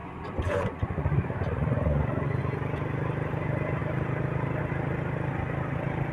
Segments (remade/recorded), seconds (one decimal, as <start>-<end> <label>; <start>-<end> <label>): 0.0-2.4 remade; 2.4-6.1 recorded